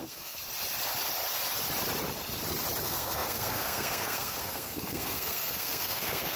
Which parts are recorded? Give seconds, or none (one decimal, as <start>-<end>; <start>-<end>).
0.4-2.8